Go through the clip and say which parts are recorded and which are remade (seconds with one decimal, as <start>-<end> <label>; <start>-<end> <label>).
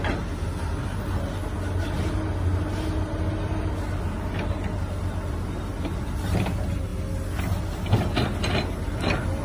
0.0-9.4 recorded